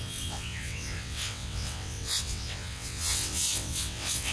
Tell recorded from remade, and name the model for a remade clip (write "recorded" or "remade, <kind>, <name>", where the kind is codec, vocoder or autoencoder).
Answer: remade, vocoder, WaveNeXt